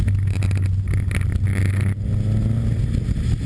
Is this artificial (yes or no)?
no